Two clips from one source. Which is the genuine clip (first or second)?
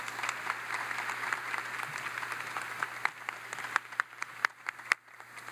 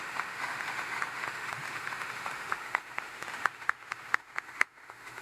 first